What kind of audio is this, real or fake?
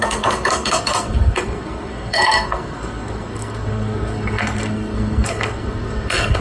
fake